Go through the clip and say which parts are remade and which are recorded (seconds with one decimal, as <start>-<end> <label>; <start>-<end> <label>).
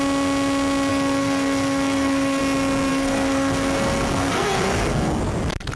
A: 0.0-0.9 recorded; 0.9-2.4 remade; 2.4-2.9 recorded; 2.9-5.2 remade; 5.2-5.8 recorded